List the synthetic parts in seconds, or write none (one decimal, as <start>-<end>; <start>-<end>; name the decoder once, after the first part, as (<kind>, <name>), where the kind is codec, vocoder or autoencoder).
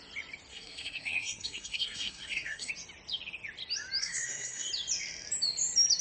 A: 0.5-2.7 (codec, SNAC); 4.0-4.7